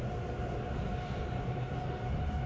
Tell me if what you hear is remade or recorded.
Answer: recorded